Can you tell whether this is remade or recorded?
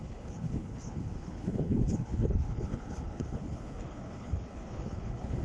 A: remade